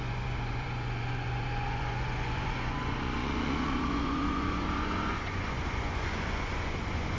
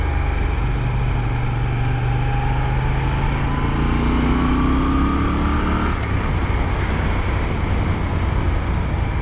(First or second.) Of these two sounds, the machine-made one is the first